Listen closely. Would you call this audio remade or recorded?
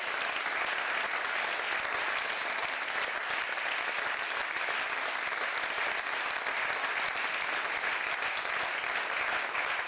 recorded